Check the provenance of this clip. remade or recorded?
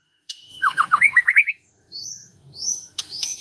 remade